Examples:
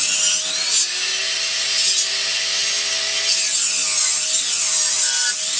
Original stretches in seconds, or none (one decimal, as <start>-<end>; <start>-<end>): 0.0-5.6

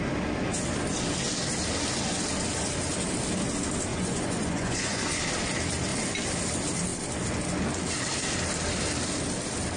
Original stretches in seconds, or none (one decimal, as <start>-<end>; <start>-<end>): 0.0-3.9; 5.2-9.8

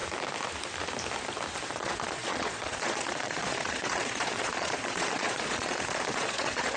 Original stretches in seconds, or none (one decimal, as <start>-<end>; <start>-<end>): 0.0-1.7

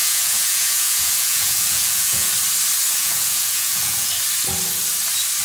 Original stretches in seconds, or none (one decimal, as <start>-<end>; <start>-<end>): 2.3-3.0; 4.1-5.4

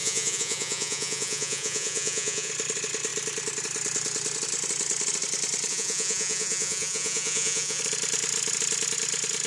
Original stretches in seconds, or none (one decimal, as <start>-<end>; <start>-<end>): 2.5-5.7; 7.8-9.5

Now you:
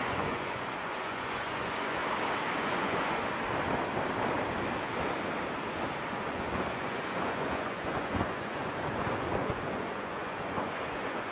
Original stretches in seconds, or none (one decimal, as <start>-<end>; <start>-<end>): 2.0-2.6; 3.2-6.1

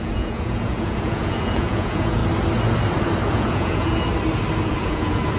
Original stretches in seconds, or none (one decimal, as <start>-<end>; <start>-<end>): 2.2-3.3; 4.1-4.7